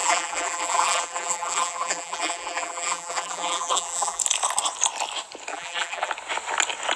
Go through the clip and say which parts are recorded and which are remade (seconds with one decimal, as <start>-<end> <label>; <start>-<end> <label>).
0.0-4.2 remade; 4.2-5.5 recorded; 5.5-6.1 remade; 6.1-7.0 recorded